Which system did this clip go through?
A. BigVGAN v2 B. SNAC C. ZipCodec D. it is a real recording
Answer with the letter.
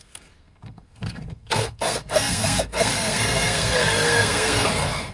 B